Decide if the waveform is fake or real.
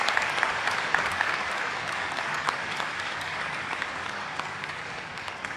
fake